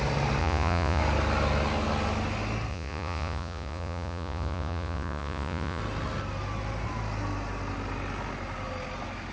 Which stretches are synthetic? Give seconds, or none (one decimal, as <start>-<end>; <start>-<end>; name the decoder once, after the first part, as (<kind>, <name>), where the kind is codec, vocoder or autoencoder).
0.4-1.0 (vocoder, Vocos); 2.7-5.8